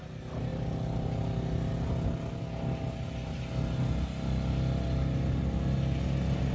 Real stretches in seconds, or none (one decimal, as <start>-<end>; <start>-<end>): 0.0-6.5